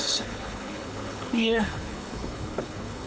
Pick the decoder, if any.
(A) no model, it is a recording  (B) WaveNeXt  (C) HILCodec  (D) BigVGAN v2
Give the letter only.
C